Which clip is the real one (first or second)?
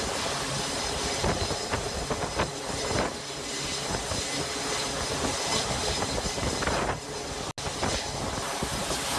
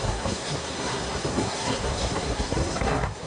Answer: first